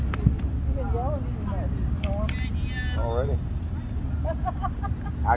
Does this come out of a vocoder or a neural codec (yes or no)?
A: no